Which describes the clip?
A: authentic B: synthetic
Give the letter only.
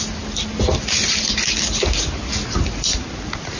A